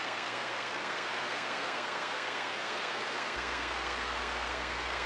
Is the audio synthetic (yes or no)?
yes